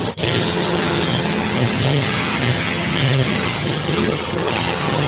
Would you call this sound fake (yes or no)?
yes